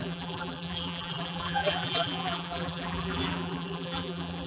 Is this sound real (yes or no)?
no